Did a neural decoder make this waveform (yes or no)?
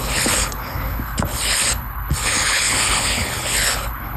yes